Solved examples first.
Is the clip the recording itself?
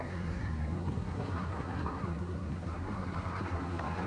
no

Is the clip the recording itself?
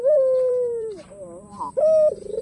no